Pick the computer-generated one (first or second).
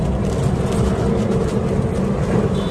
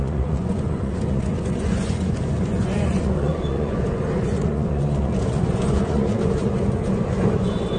second